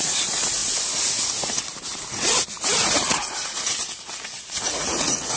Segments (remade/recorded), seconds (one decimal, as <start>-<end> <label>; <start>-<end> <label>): 0.0-0.6 remade; 0.6-2.1 recorded; 2.1-5.4 remade